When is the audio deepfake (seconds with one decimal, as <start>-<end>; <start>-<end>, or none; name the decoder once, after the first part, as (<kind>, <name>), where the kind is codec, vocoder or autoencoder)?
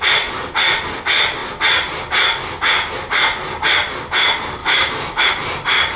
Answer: 4.6-5.3 (autoencoder, DAC-VAE)